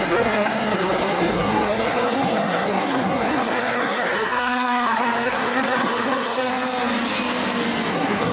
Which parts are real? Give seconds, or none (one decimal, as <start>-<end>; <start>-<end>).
6.5-7.9